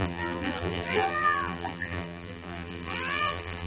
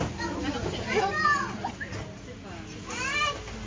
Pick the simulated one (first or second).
first